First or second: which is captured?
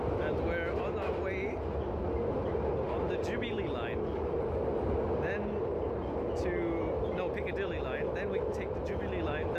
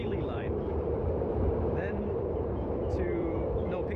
first